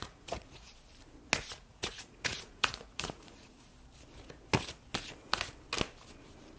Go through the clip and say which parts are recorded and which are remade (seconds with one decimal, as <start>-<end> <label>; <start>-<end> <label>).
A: 0.0-0.7 remade; 0.7-1.6 recorded; 1.6-3.7 remade; 3.7-6.6 recorded